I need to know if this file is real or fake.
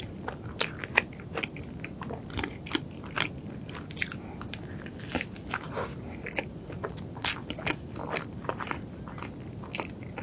real